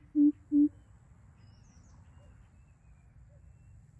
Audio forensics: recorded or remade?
recorded